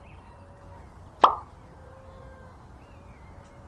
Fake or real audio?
real